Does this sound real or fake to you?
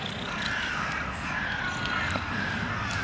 fake